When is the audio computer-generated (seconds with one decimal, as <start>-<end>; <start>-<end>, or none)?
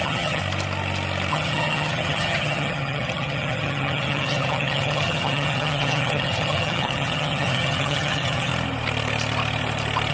0.0-0.4; 1.3-8.5